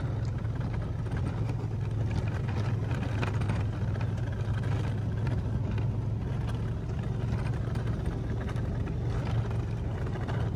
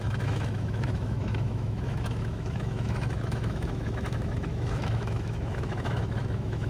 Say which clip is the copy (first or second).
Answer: second